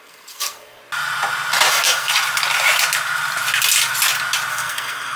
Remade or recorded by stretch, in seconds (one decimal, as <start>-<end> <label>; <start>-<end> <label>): 0.0-0.8 remade; 0.8-1.7 recorded; 1.7-2.1 remade; 2.1-4.5 recorded; 4.5-5.2 remade